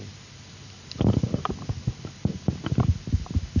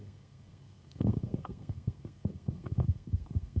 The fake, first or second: second